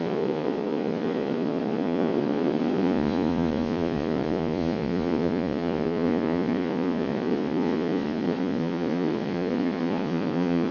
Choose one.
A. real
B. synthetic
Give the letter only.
B